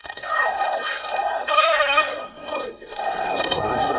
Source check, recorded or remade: remade